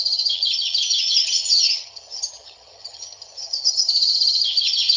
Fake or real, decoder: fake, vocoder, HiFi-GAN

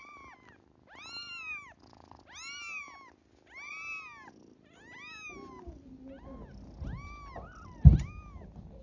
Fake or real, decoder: real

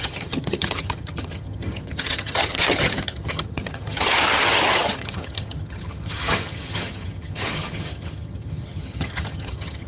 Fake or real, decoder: fake, vocoder, HiFi-GAN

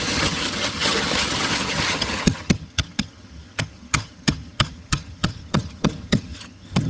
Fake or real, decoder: fake, vocoder, HiFi-GAN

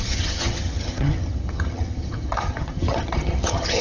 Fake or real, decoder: fake, vocoder, HiFi-GAN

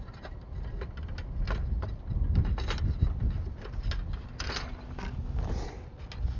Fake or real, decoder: real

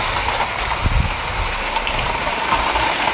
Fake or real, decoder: real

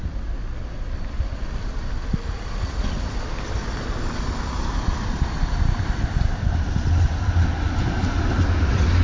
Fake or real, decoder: real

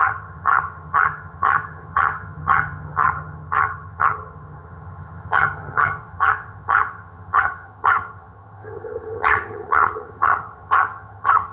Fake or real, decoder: fake, vocoder, HiFi-GAN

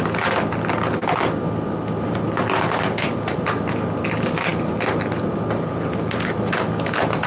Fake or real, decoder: real